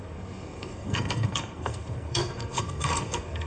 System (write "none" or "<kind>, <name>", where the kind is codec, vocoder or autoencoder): codec, SNAC